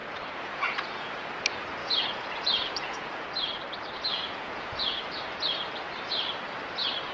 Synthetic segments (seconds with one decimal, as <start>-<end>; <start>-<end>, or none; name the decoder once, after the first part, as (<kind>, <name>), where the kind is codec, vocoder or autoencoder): 0.0-1.3 (vocoder, Vocos); 1.8-3.3; 4.1-5.0